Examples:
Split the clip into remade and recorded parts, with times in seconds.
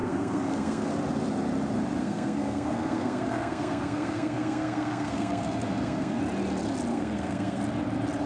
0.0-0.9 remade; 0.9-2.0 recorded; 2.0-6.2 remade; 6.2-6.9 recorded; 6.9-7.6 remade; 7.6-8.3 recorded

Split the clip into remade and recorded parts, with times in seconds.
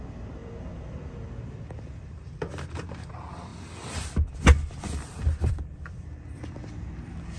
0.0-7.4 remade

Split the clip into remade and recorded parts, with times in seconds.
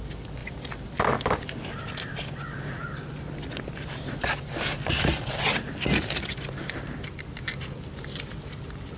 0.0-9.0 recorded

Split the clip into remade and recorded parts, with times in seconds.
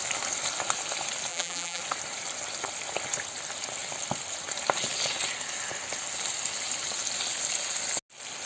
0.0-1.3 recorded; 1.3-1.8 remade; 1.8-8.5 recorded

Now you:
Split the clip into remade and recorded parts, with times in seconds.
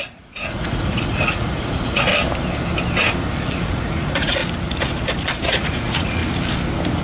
0.0-2.1 remade; 2.1-3.6 recorded; 3.6-4.4 remade; 4.4-5.4 recorded; 5.4-6.2 remade; 6.2-7.0 recorded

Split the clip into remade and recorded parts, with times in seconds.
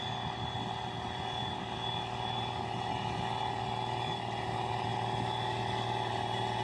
0.0-6.6 recorded